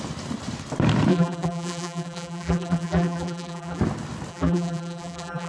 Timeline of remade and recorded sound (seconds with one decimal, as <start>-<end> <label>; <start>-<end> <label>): 0.0-1.1 recorded; 1.1-3.8 remade; 3.8-4.3 recorded; 4.3-5.5 remade